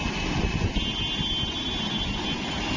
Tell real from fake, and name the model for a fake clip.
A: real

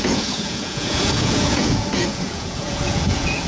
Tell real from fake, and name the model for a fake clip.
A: fake, vocoder, Vocos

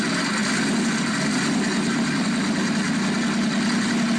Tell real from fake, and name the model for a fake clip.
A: real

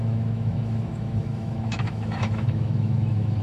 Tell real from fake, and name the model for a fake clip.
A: fake, autoencoder, DAC-VAE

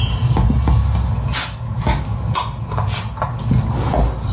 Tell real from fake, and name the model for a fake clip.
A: real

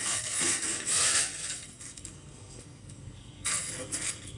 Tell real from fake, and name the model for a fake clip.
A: fake, codec, SNAC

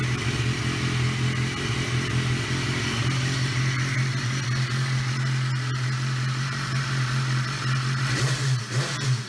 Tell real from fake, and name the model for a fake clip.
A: real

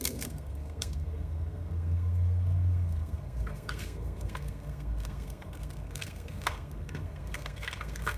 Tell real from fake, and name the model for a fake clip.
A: fake, codec, SNAC